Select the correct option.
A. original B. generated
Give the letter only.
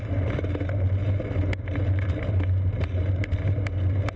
A